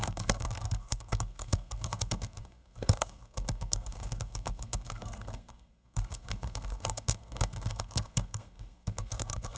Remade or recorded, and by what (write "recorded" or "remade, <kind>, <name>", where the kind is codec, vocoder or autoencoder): remade, codec, SNAC